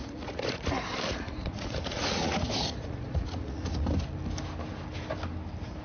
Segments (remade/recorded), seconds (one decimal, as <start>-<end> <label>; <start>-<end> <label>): 0.0-0.7 remade; 0.7-1.1 recorded; 1.1-3.9 remade; 3.9-5.8 recorded